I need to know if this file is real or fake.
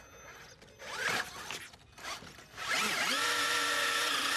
real